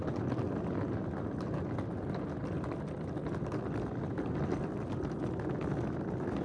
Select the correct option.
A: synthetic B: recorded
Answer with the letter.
B